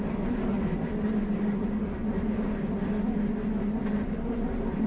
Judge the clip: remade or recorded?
recorded